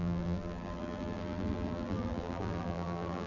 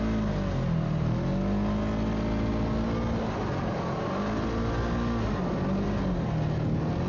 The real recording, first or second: second